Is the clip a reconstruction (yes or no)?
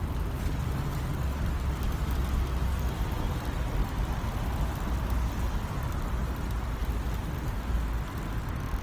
no